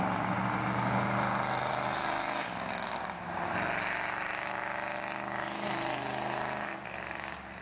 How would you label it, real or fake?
real